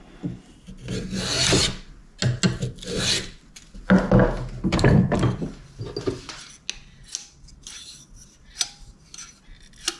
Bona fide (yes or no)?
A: yes